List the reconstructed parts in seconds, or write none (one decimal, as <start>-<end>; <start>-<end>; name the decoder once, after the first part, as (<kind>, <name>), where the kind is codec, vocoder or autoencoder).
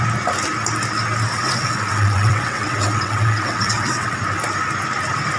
1.4-4.2 (vocoder, WaveNeXt)